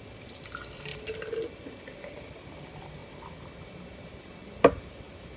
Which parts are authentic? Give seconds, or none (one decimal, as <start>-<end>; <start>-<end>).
4.4-5.4